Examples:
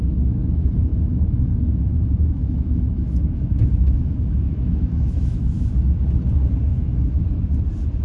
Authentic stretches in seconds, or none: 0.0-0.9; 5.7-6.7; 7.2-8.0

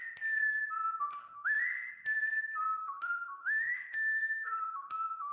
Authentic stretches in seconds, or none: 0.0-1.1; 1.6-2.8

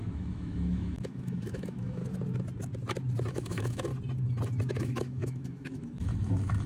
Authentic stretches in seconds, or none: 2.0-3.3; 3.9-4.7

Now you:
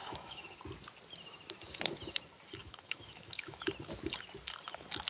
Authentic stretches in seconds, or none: 0.6-2.6; 3.7-5.1

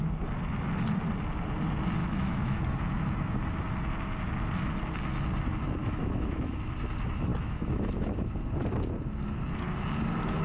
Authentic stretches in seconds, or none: 0.0-2.0; 2.6-5.8; 6.7-7.3; 8.3-10.4

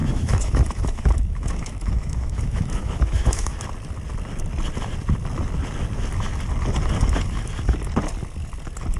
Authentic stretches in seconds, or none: 3.6-9.0